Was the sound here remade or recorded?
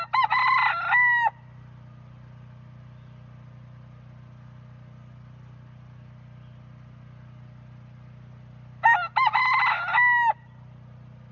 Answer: recorded